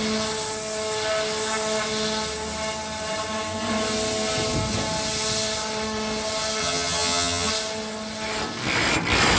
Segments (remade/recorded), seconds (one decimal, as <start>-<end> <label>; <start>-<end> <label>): 0.0-6.6 recorded; 6.6-7.5 remade; 7.5-9.4 recorded